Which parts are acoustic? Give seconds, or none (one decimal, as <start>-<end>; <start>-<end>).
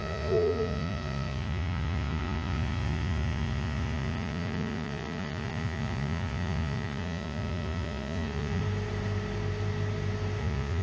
8.6-10.4